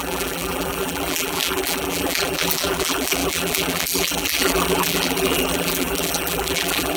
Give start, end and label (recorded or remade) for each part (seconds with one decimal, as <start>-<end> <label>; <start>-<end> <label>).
0.0-7.0 remade